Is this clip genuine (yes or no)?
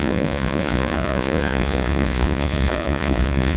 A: no